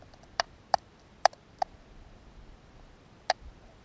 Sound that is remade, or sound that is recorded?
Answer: remade